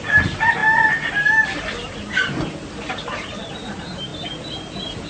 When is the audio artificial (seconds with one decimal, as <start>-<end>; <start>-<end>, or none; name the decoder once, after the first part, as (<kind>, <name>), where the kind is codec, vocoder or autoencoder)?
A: none